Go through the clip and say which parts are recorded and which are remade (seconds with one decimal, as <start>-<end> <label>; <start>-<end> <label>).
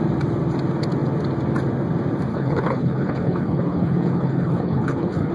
0.0-2.3 recorded; 2.3-5.3 remade